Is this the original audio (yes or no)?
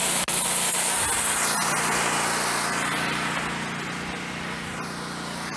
yes